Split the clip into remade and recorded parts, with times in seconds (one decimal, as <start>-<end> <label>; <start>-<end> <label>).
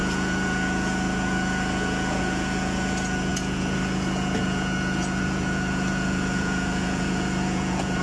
0.0-8.0 remade